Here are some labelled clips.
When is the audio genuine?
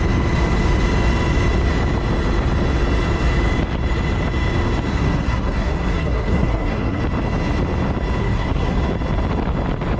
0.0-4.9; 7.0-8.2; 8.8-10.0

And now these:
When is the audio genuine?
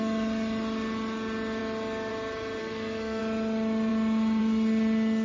0.0-2.6; 3.2-5.2